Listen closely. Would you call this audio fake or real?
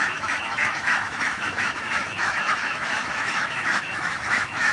fake